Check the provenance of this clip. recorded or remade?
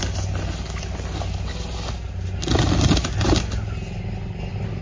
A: recorded